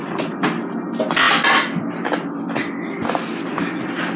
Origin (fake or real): real